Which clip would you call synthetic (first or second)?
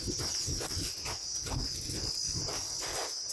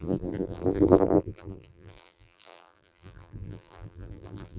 second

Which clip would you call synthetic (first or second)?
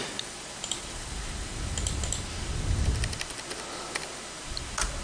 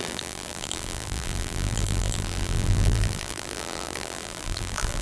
second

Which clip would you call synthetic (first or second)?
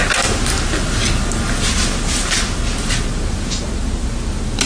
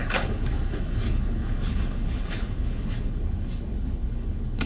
second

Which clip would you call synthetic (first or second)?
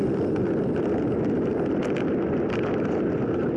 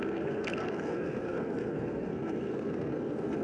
second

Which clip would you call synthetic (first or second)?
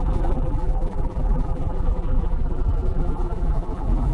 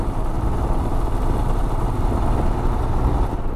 first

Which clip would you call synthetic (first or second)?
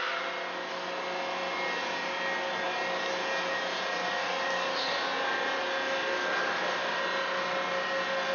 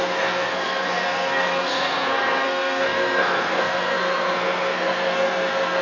second